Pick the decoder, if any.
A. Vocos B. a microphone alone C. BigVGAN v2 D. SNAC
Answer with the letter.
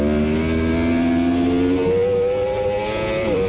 B